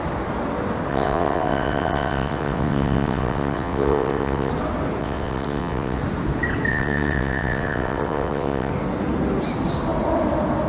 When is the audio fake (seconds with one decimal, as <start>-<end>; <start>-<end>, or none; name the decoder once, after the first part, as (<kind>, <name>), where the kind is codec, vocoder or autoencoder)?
0.9-4.5 (vocoder, WaveNeXt); 5.0-6.0; 6.7-8.7